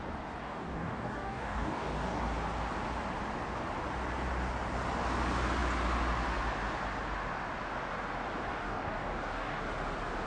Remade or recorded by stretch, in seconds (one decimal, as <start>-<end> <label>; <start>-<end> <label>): 0.0-0.4 recorded; 0.4-2.2 remade; 2.2-8.5 recorded; 8.5-9.6 remade; 9.6-10.3 recorded